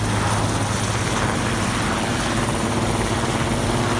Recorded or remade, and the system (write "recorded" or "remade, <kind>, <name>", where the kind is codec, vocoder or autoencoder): recorded